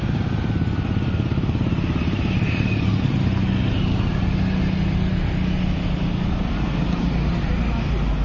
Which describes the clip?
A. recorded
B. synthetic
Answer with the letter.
A